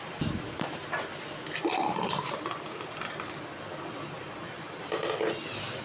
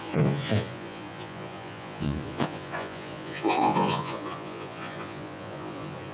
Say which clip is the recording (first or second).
first